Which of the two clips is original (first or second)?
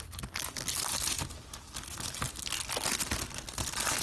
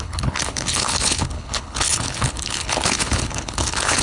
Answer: first